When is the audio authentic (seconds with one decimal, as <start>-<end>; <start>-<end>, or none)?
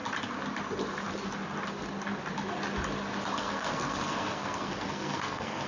0.0-3.4